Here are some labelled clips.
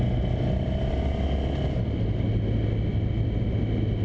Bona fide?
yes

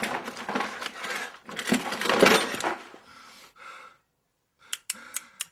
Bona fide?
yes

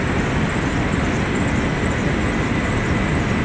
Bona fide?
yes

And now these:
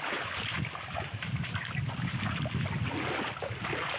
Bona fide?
yes